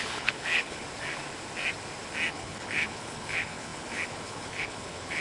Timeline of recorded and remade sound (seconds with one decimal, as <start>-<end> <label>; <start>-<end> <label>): 0.0-0.8 remade; 0.8-2.3 recorded; 2.3-5.2 remade